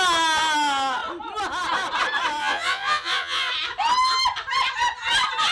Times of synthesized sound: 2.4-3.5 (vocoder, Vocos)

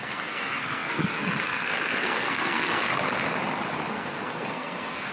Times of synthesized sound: 0.0-2.9 (codec, SNAC); 3.9-5.1

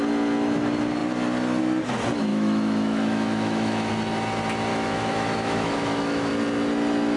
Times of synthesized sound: 2.3-3.9 (autoencoder, DAC-VAE); 4.7-6.3

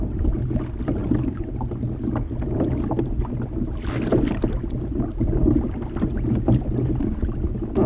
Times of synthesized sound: none

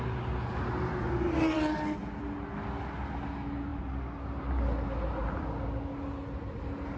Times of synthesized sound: none

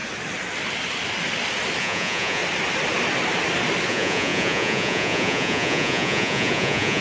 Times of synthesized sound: 1.8-2.4 (vocoder, Vocos); 3.9-7.0

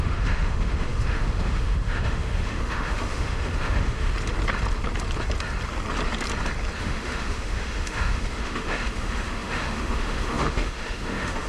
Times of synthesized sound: 0.0-4.1 (autoencoder, DAC-VAE); 6.8-11.5

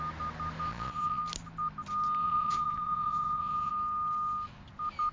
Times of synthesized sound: 0.7-1.2 (vocoder, Vocos); 2.2-3.7